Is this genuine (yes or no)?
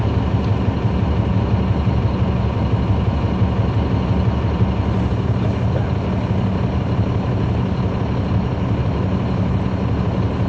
yes